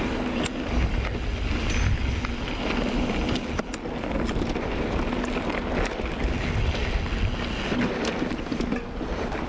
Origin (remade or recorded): recorded